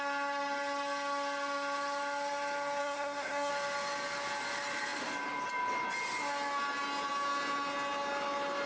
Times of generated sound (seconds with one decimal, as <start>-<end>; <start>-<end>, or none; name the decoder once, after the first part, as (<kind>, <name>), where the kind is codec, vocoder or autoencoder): 2.8-3.5 (codec, SNAC)